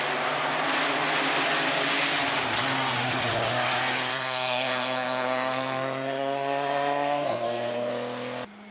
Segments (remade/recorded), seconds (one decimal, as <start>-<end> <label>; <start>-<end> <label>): 0.0-4.1 recorded; 4.1-7.9 remade; 7.9-8.7 recorded